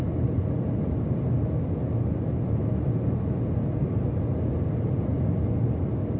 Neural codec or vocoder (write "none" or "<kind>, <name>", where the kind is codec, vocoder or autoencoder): none